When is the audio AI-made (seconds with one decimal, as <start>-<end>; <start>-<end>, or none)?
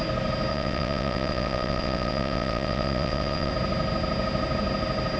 0.5-3.5